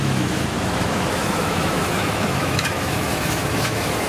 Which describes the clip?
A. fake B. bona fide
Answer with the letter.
A